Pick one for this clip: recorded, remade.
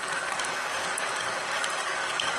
remade